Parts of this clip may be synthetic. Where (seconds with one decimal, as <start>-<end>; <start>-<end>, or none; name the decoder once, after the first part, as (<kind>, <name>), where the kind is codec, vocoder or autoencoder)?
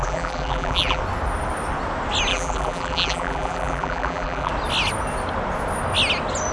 0.0-1.0 (vocoder, BigVGAN v2); 2.3-4.5